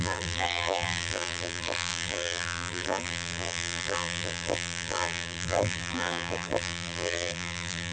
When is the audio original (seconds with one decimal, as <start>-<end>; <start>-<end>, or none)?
none